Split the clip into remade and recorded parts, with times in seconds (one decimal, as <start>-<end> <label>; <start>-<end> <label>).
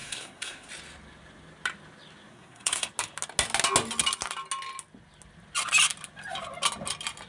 0.0-0.7 remade; 0.7-2.3 recorded; 2.3-2.9 remade; 2.9-7.3 recorded